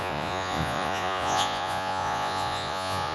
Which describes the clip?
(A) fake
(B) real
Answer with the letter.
A